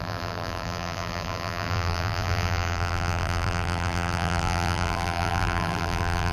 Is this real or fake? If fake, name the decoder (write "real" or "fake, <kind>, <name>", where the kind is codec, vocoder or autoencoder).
fake, vocoder, BigVGAN v2